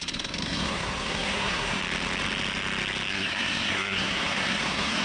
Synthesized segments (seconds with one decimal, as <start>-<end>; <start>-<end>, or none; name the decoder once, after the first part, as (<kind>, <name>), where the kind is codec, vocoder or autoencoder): 0.0-1.8 (codec, SNAC); 3.1-5.0